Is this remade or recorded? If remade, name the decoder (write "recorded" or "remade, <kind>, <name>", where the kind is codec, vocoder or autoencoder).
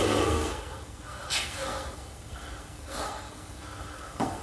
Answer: remade, codec, SNAC